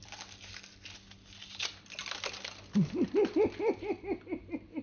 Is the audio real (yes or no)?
yes